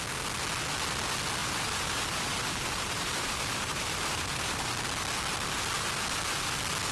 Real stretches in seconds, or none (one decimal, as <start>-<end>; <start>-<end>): 0.0-1.4; 4.7-6.9